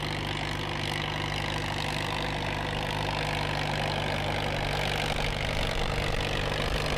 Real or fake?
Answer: real